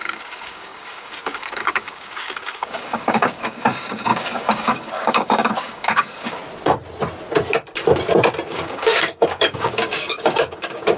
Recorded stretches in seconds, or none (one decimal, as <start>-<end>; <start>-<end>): 6.4-8.5